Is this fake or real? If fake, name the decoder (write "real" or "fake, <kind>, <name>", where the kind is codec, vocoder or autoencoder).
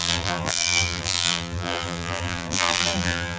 fake, vocoder, BigVGAN v2